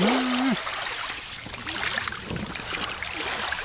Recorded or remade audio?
recorded